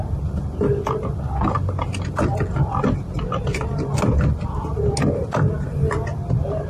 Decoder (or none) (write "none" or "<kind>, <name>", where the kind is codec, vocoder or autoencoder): none